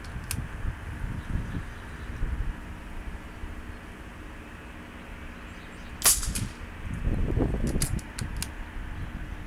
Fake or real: real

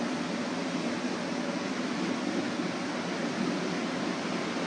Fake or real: real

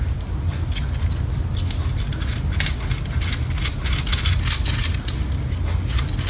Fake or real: real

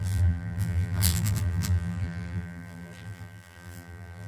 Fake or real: fake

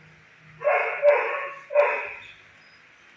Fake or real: real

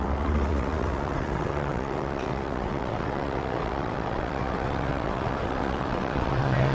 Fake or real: fake